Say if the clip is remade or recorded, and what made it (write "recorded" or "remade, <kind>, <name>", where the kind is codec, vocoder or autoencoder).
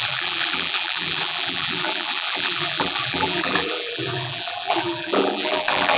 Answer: remade, vocoder, BigVGAN v2